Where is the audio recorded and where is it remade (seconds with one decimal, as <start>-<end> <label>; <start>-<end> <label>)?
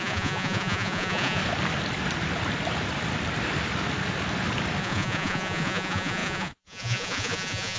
0.0-1.4 remade; 1.4-4.8 recorded; 4.8-7.8 remade